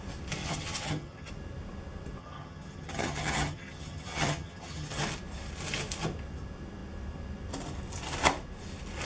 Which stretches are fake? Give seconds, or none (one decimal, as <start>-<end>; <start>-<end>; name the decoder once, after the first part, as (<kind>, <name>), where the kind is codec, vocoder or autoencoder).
0.4-1.3 (vocoder, HiFi-GAN); 2.2-5.0